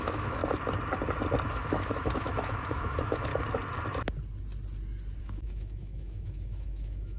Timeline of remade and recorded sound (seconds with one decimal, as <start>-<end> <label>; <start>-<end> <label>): 0.0-0.4 remade; 0.4-1.5 recorded; 1.5-3.3 remade; 3.3-5.2 recorded; 5.2-7.2 remade

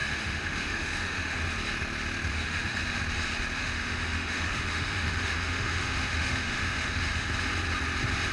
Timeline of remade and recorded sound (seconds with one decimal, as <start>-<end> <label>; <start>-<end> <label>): 0.0-1.4 remade; 1.4-2.3 recorded; 2.3-3.0 remade; 3.0-3.6 recorded; 3.6-7.3 remade; 7.3-8.3 recorded

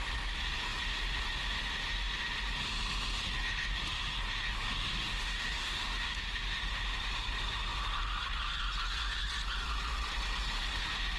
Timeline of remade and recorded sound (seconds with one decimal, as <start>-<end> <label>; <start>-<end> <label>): 0.0-5.1 recorded; 5.1-6.2 remade; 6.2-11.2 recorded

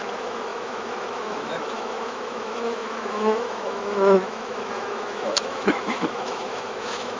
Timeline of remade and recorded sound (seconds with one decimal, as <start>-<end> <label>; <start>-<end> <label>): 0.0-7.2 remade

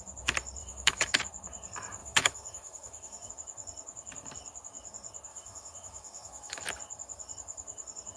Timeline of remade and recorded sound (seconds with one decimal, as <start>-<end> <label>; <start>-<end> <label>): 0.0-0.6 recorded; 0.6-1.2 remade; 1.2-2.0 recorded; 2.0-3.3 remade; 3.3-5.3 recorded; 5.3-6.6 remade; 6.6-8.2 recorded